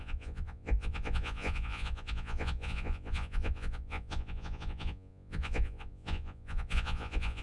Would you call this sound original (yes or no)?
no